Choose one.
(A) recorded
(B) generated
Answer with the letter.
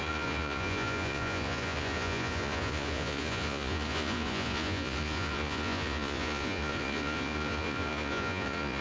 B